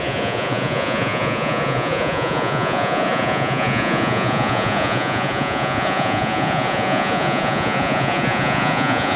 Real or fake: fake